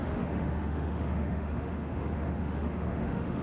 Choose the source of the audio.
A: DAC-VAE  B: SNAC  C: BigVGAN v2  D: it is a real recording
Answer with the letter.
A